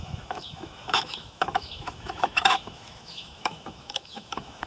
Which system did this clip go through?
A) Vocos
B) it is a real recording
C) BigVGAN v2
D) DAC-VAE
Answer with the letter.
D